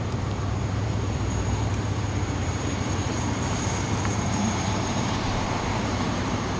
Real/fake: fake